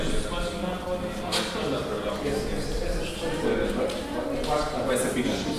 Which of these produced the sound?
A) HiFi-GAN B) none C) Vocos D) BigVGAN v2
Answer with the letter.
B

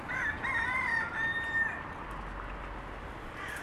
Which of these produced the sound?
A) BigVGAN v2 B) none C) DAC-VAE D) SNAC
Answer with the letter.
B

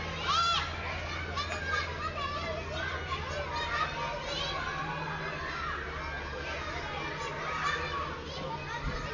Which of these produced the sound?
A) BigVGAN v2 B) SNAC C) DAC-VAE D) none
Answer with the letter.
D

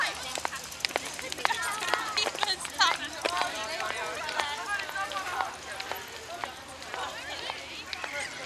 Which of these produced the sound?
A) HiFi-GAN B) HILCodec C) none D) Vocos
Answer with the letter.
C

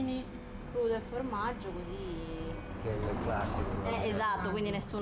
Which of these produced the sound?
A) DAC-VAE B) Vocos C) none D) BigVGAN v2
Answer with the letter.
C